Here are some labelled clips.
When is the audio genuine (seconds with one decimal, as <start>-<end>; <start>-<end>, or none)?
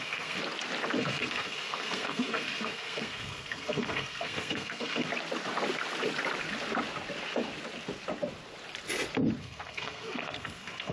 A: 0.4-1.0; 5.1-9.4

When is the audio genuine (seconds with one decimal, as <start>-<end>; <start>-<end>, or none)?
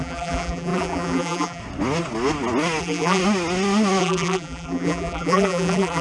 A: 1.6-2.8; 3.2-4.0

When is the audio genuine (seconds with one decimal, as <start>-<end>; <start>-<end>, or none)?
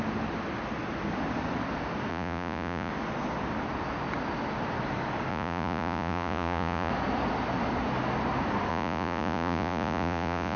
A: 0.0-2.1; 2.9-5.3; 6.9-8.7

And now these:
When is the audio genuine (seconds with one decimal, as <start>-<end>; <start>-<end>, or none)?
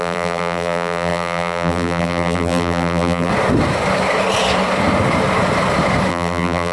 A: 3.3-6.1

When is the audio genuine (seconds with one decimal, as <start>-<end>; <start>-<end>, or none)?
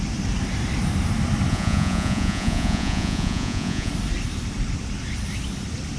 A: 0.0-1.5; 3.9-6.0